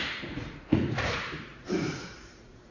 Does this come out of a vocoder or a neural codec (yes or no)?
yes